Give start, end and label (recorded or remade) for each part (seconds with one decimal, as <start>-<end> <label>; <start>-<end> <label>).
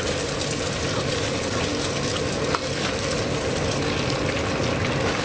0.0-5.2 recorded